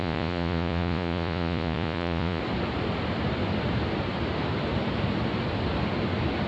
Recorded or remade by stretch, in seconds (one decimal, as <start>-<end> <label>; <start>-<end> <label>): 0.0-2.4 remade; 2.4-6.5 recorded